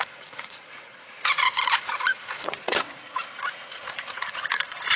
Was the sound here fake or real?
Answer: fake